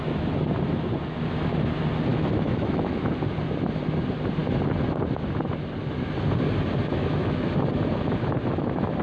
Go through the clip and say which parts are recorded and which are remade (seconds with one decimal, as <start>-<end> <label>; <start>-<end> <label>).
0.0-2.1 recorded; 2.1-3.1 remade; 3.1-6.9 recorded; 6.9-7.5 remade; 7.5-9.0 recorded